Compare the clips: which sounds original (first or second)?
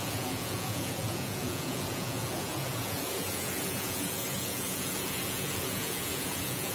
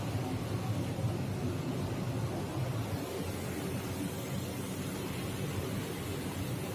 second